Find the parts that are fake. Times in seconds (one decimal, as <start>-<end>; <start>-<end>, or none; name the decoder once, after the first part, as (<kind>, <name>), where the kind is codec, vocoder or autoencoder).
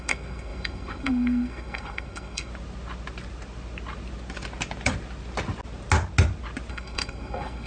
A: 0.0-2.5 (codec, SNAC); 6.7-7.7